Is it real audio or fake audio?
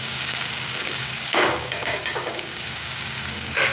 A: fake